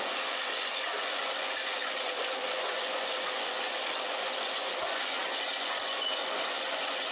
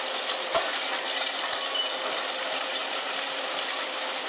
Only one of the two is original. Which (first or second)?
second